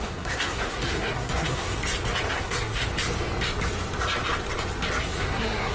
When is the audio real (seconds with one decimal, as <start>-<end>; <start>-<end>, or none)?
1.8-2.3; 2.8-5.0